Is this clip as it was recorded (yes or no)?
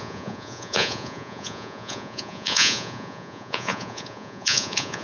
no